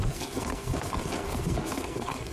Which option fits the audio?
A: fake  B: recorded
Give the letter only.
A